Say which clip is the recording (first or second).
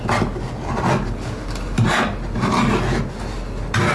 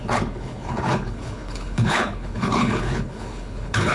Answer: first